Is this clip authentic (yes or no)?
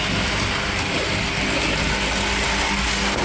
yes